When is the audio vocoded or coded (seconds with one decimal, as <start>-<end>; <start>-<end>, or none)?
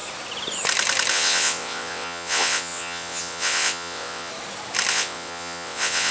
1.1-4.3; 4.9-6.1